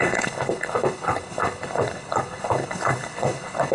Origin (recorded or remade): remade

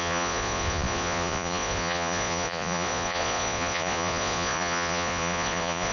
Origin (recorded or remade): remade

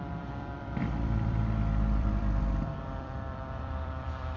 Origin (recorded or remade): remade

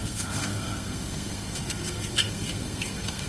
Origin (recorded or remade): remade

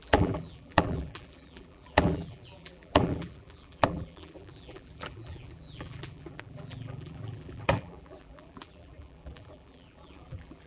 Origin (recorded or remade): remade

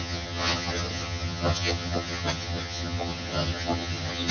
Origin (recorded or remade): remade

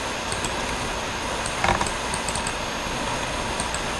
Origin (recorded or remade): recorded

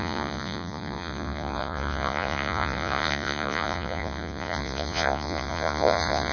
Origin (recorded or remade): remade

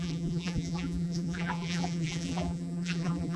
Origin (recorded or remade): remade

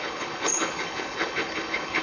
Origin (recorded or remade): remade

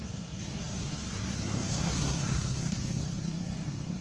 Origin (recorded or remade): remade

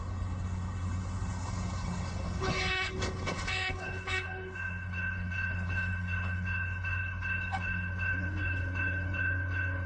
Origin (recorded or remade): remade